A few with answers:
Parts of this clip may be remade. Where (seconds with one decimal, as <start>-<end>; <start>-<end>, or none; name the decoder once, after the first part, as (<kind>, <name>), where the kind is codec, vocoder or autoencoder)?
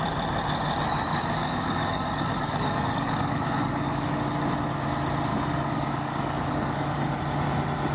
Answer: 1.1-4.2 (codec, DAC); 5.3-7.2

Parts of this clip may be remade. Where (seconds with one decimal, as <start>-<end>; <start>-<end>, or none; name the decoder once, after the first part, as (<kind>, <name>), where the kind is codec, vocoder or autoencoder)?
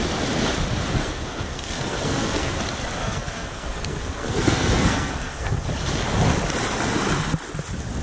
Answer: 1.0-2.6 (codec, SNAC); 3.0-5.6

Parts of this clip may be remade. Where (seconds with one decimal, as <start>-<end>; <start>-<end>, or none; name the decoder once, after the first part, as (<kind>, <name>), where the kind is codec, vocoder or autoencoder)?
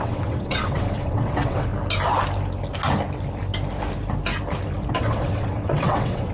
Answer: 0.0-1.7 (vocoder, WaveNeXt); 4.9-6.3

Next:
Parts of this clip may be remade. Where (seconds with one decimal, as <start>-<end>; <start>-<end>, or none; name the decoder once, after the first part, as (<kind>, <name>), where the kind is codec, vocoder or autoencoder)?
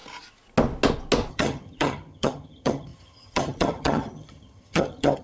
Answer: 1.3-5.2 (vocoder, HiFi-GAN)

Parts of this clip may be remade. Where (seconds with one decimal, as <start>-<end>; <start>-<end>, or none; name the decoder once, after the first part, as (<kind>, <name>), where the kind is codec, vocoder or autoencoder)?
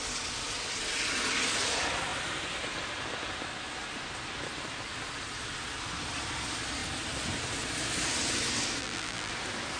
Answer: 8.8-9.3 (vocoder, BigVGAN v2)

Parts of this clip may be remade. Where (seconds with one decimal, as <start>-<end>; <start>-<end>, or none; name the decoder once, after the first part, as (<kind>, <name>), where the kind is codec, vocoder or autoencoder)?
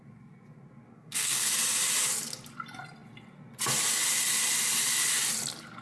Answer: 0.9-1.5 (codec, SNAC)